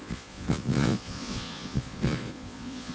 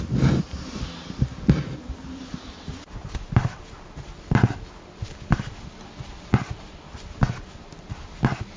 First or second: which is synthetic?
first